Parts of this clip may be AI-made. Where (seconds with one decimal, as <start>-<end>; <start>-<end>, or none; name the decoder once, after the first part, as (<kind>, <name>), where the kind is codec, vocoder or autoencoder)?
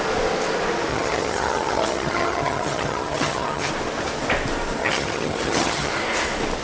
0.9-3.7 (vocoder, HiFi-GAN); 4.8-5.9